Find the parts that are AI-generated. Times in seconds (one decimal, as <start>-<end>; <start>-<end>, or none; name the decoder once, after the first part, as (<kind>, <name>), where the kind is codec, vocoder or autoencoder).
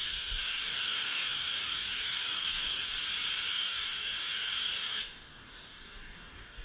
0.0-2.8 (codec, DAC); 3.5-6.6